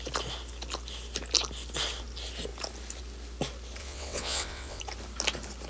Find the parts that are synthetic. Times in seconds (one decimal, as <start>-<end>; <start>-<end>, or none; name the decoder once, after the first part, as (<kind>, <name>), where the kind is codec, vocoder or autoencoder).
3.8-4.8 (vocoder, WaveNeXt)